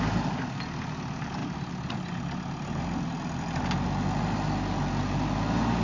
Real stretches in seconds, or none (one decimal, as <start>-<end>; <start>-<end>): 0.0-5.8